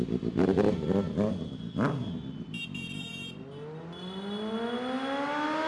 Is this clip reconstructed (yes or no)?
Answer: no